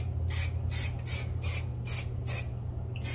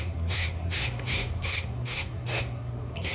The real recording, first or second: first